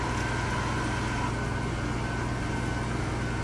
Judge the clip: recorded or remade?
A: recorded